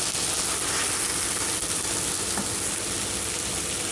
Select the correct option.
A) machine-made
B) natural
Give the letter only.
B